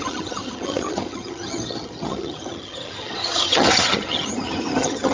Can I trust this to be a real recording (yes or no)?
no